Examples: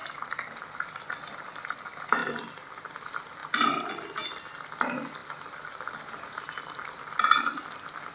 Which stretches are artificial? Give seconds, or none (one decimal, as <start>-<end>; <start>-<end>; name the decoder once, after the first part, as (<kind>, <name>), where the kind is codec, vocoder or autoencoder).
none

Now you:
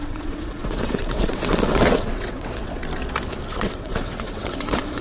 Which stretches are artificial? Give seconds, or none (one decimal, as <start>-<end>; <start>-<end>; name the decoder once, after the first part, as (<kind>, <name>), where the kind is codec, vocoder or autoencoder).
0.0-2.8 (vocoder, WaveNeXt); 3.5-5.0

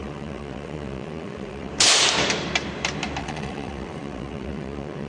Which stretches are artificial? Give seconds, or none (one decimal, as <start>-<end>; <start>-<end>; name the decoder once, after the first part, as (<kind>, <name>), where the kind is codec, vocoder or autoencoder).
0.0-1.7 (vocoder, WaveNeXt); 3.2-5.1

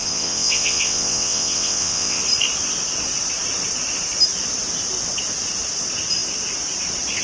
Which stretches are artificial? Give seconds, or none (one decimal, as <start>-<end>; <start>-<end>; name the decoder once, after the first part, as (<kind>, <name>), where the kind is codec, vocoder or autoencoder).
0.0-2.2 (vocoder, WaveNeXt)

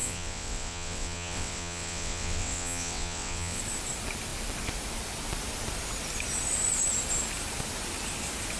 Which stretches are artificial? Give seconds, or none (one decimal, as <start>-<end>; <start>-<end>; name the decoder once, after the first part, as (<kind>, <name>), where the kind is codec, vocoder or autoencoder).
0.0-3.6 (vocoder, WaveNeXt)

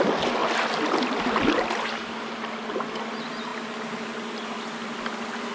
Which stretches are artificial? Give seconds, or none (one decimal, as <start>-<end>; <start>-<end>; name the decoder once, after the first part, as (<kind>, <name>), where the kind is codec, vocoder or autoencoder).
none